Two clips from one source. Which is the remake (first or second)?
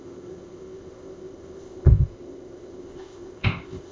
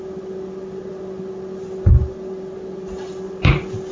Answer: first